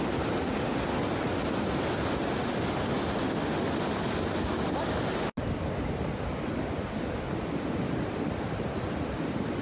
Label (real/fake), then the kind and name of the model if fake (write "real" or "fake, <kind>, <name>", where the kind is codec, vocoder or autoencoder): real